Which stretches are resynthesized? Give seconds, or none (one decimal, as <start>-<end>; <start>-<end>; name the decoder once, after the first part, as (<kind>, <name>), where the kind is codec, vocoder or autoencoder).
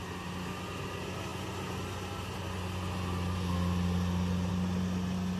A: none